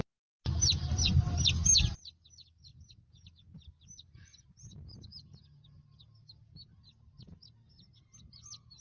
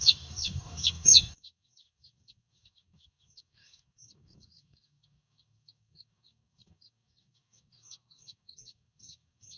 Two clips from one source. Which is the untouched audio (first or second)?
first